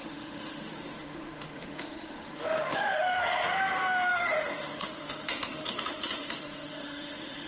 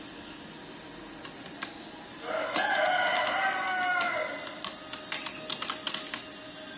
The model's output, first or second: first